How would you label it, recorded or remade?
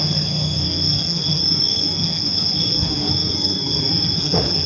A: remade